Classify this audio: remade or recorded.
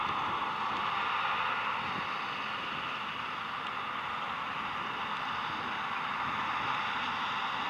recorded